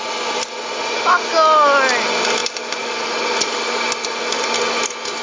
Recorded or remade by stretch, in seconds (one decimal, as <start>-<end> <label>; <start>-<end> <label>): 0.0-5.2 recorded